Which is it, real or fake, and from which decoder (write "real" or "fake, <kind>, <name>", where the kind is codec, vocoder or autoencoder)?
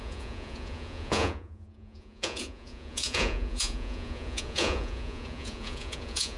fake, vocoder, Vocos